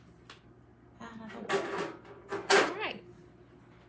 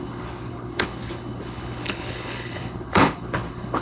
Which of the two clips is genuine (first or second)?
first